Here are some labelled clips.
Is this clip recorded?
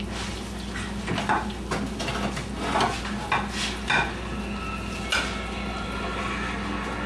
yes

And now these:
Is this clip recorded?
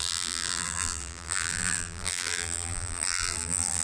no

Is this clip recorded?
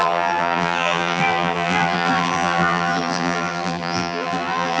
no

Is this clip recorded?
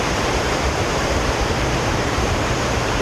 no